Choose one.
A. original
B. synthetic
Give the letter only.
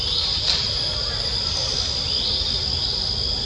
A